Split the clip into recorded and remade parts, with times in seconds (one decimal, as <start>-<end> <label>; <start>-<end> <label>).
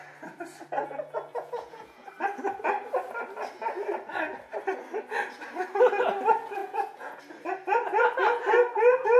0.0-1.3 recorded; 1.3-2.1 remade; 2.1-6.6 recorded; 6.6-7.2 remade; 7.2-9.2 recorded